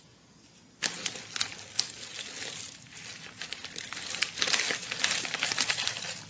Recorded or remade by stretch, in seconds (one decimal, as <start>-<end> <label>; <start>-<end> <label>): 0.0-3.6 recorded; 3.6-6.3 remade